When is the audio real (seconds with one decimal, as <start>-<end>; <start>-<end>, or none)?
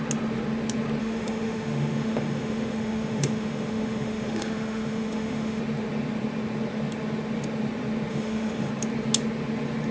0.0-1.0; 5.6-8.1; 8.7-9.9